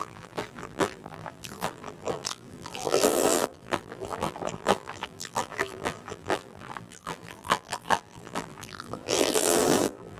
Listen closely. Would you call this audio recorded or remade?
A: remade